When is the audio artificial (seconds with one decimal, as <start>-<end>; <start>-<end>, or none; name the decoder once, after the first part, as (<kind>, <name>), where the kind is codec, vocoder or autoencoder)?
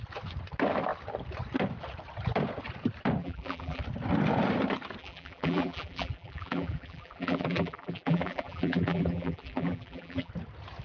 3.2-3.8 (vocoder, BigVGAN v2); 5.0-10.3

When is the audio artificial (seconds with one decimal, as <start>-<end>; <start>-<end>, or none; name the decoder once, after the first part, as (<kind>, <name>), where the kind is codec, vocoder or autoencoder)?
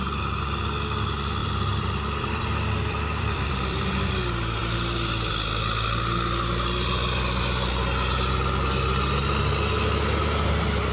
1.4-4.1 (vocoder, BigVGAN v2)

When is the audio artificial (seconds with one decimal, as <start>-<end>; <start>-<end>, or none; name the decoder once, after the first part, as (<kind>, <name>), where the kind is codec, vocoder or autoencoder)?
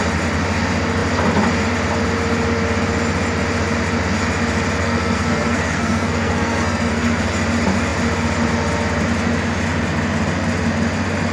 4.8-7.3 (codec, SNAC)